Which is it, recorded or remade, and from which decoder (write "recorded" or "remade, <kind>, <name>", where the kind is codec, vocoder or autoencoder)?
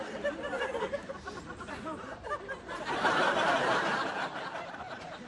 remade, vocoder, BigVGAN v2